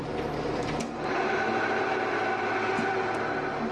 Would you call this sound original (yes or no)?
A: yes